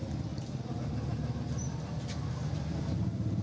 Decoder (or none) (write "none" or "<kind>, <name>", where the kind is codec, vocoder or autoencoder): none